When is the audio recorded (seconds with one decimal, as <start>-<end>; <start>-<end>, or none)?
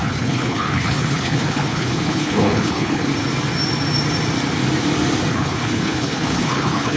3.1-5.3